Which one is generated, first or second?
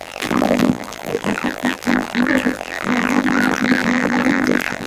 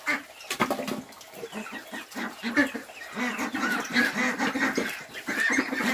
first